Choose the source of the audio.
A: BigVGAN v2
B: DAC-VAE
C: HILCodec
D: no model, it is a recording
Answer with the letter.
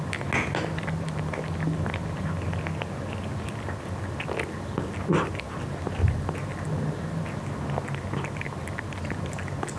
D